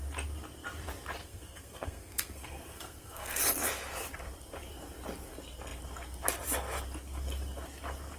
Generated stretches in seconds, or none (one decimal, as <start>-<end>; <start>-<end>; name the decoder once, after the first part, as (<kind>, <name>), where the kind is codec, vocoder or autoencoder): 1.2-3.4 (codec, SNAC)